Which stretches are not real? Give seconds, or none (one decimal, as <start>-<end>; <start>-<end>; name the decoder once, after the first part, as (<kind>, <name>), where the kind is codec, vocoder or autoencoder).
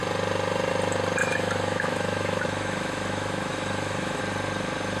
1.2-4.2 (autoencoder, DAC-VAE)